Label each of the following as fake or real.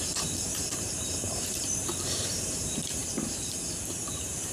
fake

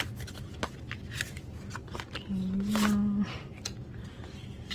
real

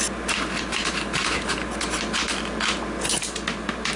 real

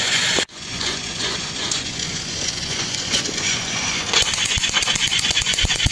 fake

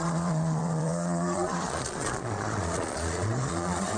fake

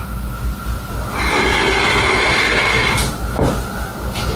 real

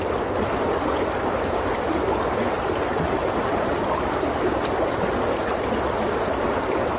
real